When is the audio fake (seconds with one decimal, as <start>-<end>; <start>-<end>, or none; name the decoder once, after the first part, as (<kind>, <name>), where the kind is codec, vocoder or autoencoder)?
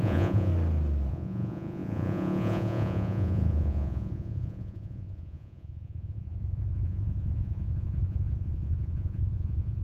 0.0-0.5 (vocoder, Vocos); 1.1-9.8